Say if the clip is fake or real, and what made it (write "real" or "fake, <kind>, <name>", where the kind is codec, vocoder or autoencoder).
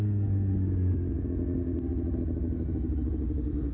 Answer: real